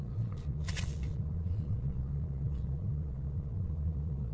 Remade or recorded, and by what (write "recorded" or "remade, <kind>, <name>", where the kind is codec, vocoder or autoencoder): remade, vocoder, Vocos